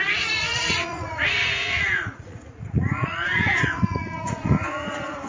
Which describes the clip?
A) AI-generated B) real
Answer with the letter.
A